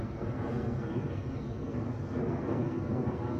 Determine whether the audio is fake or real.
fake